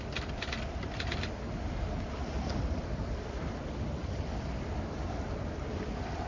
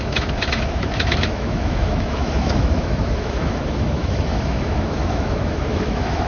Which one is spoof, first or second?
second